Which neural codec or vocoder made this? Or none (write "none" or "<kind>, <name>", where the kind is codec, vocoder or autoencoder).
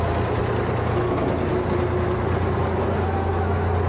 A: none